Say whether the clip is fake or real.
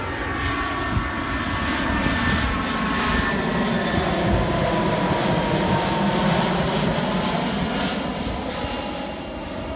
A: real